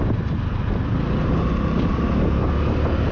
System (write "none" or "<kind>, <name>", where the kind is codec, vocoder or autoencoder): none